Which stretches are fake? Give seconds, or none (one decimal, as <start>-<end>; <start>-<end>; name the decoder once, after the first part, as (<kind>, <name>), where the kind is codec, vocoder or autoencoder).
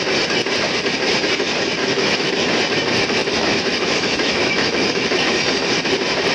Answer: 1.8-2.3 (autoencoder, DAC-VAE); 3.2-5.3